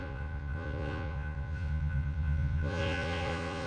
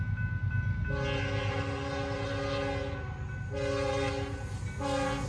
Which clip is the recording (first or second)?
second